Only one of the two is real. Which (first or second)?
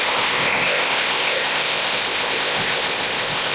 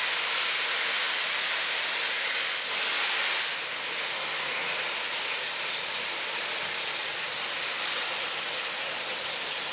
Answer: second